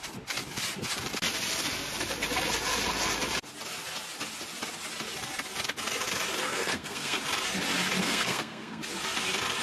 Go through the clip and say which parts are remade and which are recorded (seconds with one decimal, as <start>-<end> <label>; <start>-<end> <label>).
0.0-6.4 recorded; 6.4-7.2 remade; 7.2-8.0 recorded; 8.0-8.8 remade; 8.8-9.6 recorded